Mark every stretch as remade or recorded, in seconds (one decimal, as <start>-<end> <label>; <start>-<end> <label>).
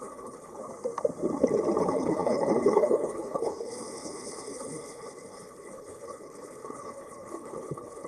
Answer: 0.0-0.6 remade; 0.6-1.8 recorded; 1.8-8.1 remade